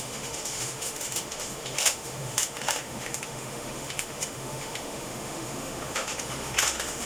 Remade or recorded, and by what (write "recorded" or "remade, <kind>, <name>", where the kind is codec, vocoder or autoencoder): remade, autoencoder, DAC-VAE